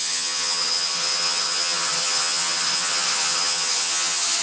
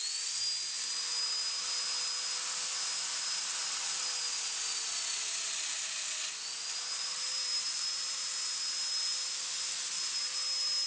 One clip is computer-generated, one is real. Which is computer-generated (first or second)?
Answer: first